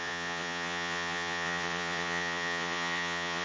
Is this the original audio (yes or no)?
no